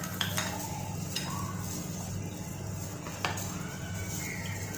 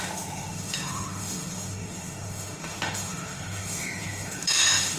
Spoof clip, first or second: second